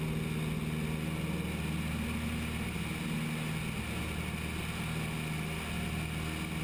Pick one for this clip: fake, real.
real